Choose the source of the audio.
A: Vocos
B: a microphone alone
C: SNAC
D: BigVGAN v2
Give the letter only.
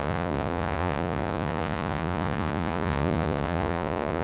A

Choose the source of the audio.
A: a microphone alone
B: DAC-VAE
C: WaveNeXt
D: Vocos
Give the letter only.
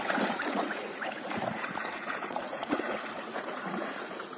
D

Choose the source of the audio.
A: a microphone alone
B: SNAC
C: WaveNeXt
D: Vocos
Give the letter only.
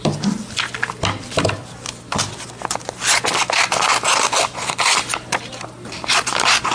A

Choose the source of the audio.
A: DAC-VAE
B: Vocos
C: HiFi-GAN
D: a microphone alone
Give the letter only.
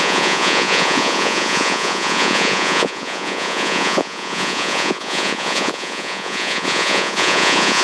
B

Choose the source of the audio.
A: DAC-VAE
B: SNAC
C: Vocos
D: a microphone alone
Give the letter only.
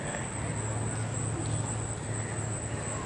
D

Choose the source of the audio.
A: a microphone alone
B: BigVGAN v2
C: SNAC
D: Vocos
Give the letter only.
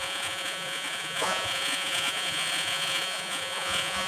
D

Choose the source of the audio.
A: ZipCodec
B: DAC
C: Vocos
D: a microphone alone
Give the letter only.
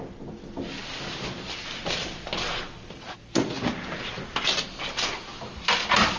D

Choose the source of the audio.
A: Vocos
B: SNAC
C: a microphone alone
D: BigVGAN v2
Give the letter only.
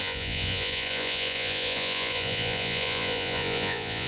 A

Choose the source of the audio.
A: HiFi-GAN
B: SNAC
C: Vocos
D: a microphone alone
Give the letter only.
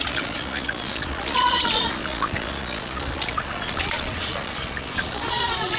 C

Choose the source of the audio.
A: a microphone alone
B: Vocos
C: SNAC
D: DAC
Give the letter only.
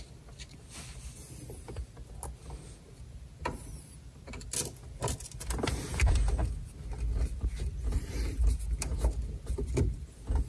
A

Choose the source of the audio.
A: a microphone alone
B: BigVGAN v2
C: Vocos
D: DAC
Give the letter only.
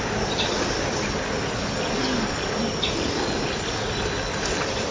A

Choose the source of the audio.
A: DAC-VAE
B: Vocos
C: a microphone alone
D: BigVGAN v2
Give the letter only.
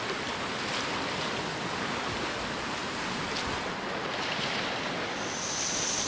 C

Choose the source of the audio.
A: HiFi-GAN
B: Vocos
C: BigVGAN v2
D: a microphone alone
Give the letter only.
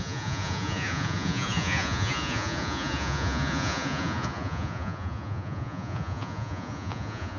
B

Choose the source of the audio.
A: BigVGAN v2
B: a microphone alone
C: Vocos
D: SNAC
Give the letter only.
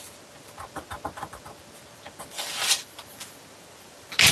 B